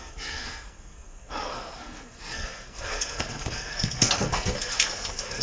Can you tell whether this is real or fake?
fake